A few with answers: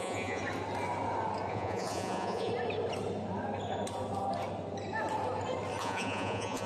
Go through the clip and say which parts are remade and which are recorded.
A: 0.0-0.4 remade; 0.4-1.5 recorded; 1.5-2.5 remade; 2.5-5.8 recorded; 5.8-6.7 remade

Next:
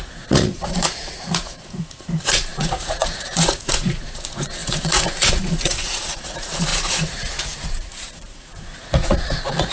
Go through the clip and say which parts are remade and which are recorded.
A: 0.0-9.7 remade